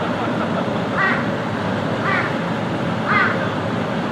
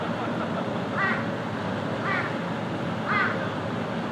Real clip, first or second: second